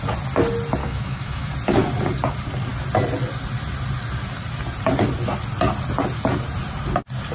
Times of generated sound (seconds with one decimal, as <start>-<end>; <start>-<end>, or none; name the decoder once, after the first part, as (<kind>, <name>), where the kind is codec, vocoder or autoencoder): 0.8-1.5 (autoencoder, DAC-VAE)

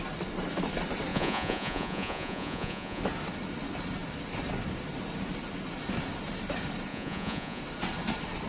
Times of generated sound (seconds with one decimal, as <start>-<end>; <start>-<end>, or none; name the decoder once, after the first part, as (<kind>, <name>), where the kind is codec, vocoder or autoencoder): 1.1-3.0 (vocoder, Vocos); 6.9-7.6

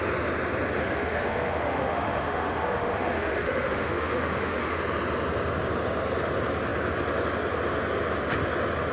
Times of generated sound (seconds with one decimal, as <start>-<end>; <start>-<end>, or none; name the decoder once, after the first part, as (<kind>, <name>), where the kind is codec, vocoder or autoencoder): 0.8-4.8 (autoencoder, DAC-VAE)

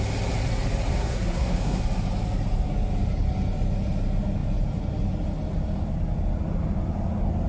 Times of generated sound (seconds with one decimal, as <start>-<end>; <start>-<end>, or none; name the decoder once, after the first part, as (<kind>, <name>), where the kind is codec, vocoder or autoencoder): 0.9-1.8 (codec, SNAC)